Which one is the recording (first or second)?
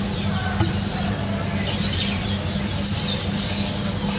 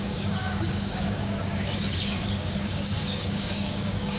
first